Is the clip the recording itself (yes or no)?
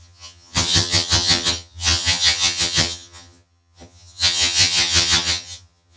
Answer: no